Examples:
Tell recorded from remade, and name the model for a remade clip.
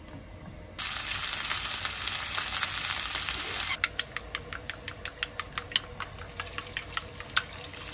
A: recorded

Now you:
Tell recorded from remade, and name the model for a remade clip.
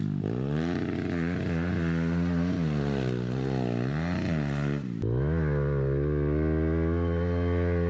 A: recorded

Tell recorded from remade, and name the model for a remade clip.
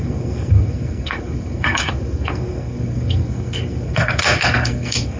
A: remade, codec, SNAC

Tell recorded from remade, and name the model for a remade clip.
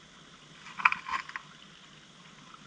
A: recorded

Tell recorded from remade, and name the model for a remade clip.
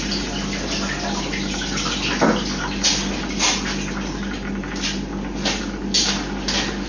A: recorded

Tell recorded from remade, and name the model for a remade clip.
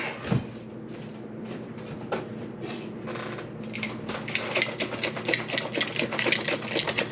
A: recorded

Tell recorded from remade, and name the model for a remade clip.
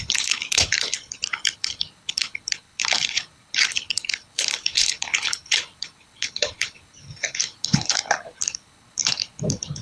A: remade, codec, HILCodec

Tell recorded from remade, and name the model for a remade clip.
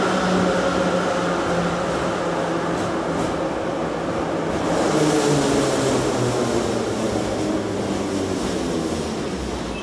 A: recorded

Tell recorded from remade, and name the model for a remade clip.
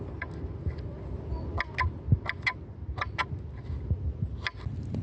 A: recorded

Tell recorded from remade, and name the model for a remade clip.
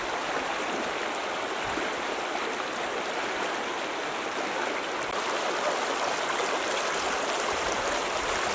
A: recorded